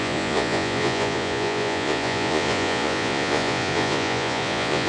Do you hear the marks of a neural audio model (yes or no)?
yes